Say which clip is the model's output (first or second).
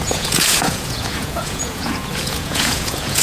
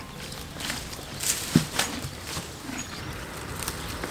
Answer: first